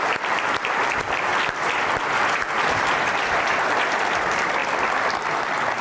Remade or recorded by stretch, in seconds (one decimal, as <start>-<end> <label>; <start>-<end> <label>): 0.0-1.3 remade; 1.3-2.6 recorded; 2.6-5.8 remade